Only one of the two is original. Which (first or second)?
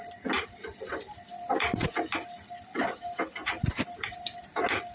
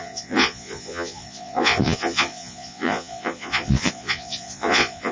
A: first